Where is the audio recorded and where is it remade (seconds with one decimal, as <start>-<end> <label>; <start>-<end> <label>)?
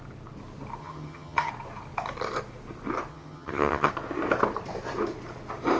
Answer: 0.0-0.8 recorded; 0.8-1.5 remade; 1.5-3.1 recorded; 3.1-3.9 remade; 3.9-5.8 recorded